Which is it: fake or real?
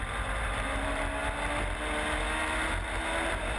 real